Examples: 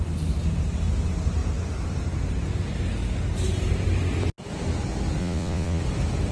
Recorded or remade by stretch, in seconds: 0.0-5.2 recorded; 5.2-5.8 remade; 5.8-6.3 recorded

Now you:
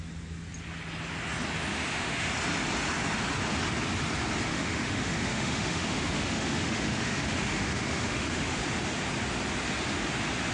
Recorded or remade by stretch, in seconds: 0.0-1.7 recorded; 1.7-2.3 remade; 2.3-4.5 recorded; 4.5-8.6 remade; 8.6-10.5 recorded

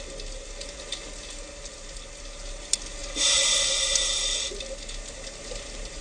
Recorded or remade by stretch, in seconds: 0.0-6.0 recorded

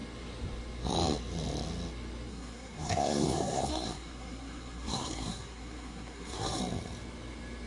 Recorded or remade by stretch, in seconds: 0.0-2.3 recorded; 2.3-6.6 remade; 6.6-7.7 recorded

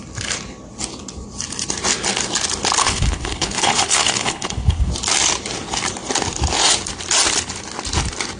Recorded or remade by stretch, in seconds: 0.0-2.8 recorded; 2.8-4.9 remade; 4.9-8.4 recorded

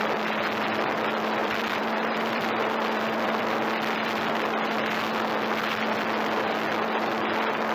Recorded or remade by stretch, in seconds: 0.0-1.4 recorded; 1.4-4.2 remade; 4.2-7.7 recorded

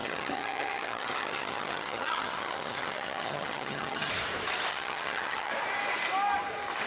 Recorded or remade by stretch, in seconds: 0.0-4.1 remade; 4.1-4.7 recorded; 4.7-5.5 remade; 5.5-6.9 recorded